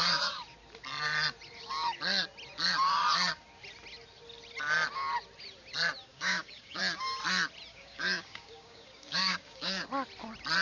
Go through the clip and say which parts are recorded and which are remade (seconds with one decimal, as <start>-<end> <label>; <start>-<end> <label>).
0.0-6.1 recorded; 6.1-6.8 remade; 6.8-7.7 recorded; 7.7-9.9 remade; 9.9-10.6 recorded

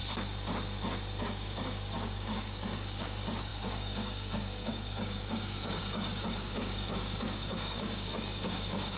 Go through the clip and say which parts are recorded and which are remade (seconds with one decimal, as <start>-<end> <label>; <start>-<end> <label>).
0.0-1.2 recorded; 1.2-9.0 remade

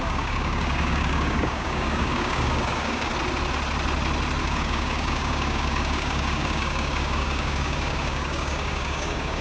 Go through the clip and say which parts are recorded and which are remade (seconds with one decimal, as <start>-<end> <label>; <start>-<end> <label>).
0.0-3.1 remade; 3.1-4.4 recorded; 4.4-9.4 remade

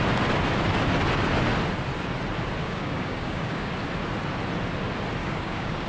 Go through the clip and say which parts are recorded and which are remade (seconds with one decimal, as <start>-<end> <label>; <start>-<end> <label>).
0.0-2.6 recorded; 2.6-3.7 remade; 3.7-5.2 recorded; 5.2-5.9 remade

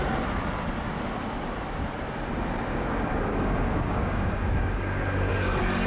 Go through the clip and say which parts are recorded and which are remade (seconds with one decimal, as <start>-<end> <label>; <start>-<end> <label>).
0.0-2.7 recorded; 2.7-5.3 remade; 5.3-5.9 recorded

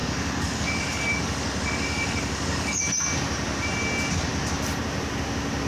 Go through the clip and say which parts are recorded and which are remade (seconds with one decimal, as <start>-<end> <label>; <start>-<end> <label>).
0.0-2.8 remade; 2.8-5.7 recorded

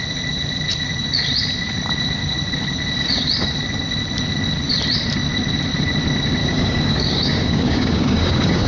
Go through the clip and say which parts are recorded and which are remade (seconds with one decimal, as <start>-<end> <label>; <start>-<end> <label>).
0.0-6.4 recorded; 6.4-8.7 remade

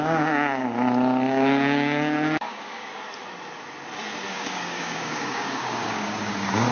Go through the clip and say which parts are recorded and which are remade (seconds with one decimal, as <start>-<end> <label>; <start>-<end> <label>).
0.0-0.6 remade; 0.6-1.3 recorded; 1.3-2.9 remade; 2.9-4.3 recorded; 4.3-6.7 remade